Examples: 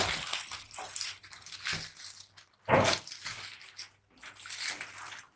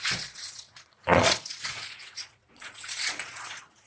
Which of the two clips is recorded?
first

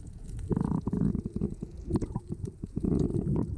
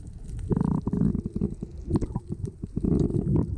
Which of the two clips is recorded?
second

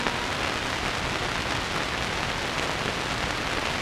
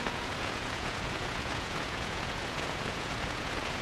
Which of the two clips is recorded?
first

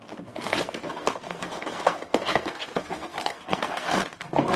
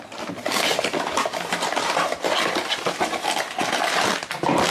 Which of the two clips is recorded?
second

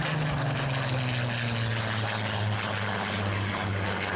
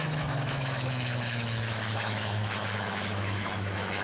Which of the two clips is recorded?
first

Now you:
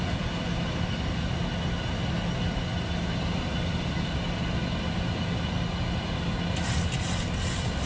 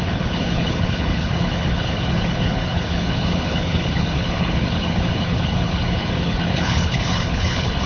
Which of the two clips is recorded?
first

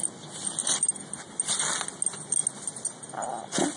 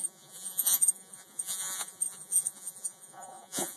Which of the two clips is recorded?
first